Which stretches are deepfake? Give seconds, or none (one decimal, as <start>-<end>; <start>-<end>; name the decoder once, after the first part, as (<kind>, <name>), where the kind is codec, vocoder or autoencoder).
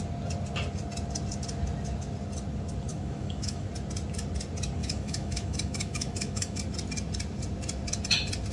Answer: 2.9-3.7 (autoencoder, DAC-VAE); 4.8-6.6